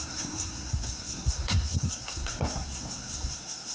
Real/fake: fake